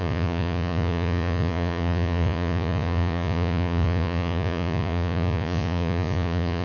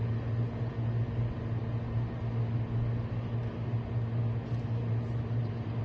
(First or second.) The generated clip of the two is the first